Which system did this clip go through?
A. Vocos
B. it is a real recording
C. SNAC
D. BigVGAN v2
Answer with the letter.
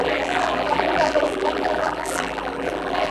D